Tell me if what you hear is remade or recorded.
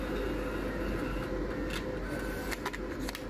recorded